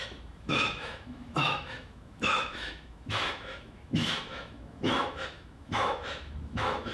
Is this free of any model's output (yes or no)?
no